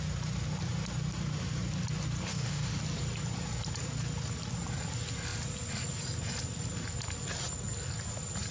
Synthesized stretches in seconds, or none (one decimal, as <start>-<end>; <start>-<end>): 2.3-2.8